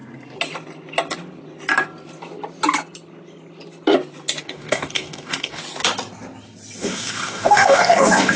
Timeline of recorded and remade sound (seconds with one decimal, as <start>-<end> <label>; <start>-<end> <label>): 0.0-4.4 recorded; 4.4-5.6 remade; 5.6-6.8 recorded; 6.8-8.4 remade